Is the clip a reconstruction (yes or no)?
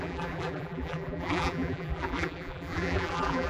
yes